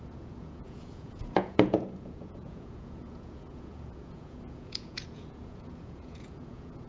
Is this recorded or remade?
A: remade